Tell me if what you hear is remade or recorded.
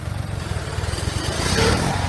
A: remade